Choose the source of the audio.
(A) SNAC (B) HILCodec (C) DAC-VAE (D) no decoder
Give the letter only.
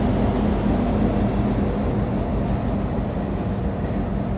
D